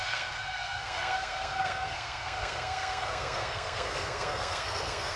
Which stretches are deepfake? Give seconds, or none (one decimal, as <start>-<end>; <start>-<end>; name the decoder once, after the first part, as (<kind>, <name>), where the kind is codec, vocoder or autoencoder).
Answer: 0.0-5.2 (codec, SNAC)